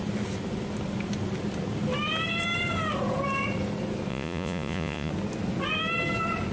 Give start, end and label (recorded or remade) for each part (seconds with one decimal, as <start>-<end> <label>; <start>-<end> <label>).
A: 0.0-4.1 recorded; 4.1-5.1 remade; 5.1-6.5 recorded